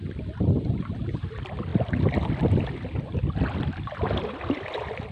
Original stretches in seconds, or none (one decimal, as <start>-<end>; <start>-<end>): 0.0-5.1